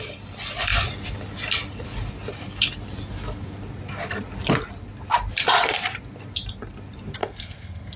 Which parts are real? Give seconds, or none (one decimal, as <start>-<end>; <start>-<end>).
0.0-7.2